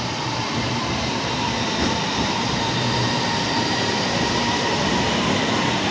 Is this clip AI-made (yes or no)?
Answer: yes